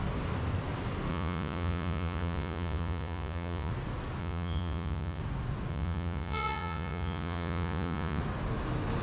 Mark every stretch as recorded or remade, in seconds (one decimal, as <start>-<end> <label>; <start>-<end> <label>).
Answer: 0.0-1.1 recorded; 1.1-3.7 remade; 3.7-4.2 recorded; 4.2-5.2 remade; 5.2-5.7 recorded; 5.7-8.2 remade; 8.2-9.0 recorded